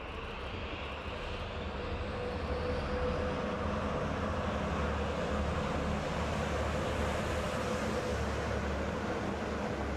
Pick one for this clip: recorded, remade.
recorded